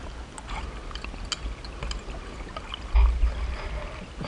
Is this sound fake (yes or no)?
no